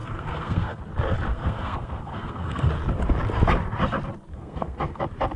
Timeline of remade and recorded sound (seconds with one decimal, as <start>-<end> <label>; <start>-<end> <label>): 0.0-0.8 remade; 0.8-1.3 recorded; 1.3-2.7 remade; 2.7-4.3 recorded; 4.3-5.0 remade; 5.0-5.4 recorded